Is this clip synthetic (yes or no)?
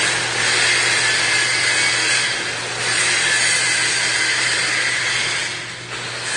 no